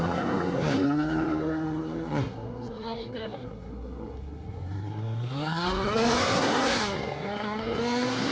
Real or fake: fake